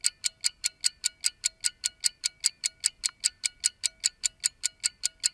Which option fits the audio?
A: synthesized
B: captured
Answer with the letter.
B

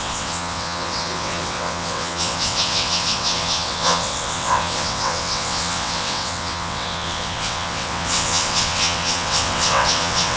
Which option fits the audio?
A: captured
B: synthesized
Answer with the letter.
B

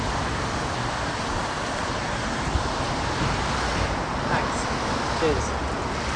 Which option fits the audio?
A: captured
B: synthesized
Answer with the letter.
A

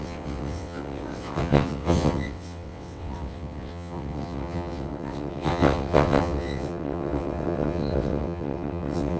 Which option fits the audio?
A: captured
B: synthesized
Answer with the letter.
B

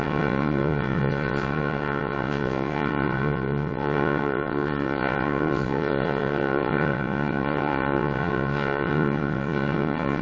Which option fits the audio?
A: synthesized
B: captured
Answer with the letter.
A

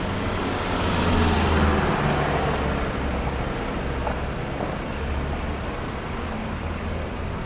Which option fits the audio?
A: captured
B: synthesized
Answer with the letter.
A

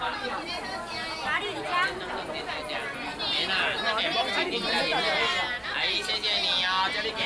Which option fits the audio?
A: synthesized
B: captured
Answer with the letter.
B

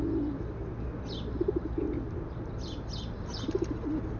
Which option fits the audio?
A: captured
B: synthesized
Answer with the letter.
A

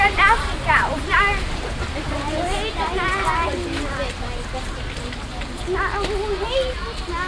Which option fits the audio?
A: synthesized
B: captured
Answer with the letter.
B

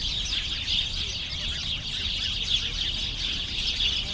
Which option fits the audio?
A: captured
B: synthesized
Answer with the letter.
A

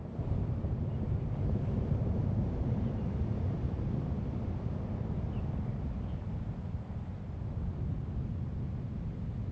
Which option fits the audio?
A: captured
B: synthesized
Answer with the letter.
A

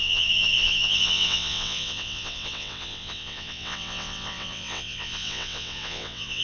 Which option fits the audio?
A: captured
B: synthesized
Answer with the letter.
B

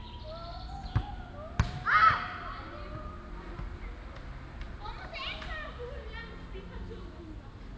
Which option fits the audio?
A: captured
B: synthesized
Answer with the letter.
A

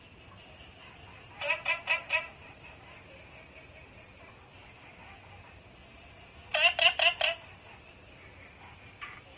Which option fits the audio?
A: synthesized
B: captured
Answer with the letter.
B